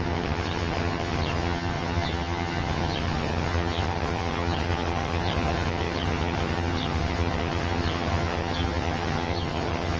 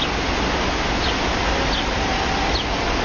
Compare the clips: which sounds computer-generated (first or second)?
first